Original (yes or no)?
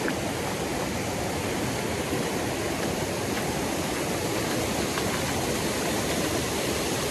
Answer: yes